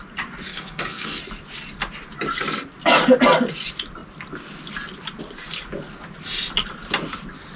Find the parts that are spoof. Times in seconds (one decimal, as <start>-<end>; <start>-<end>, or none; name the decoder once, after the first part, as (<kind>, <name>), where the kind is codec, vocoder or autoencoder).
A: 0.5-1.2 (codec, SNAC)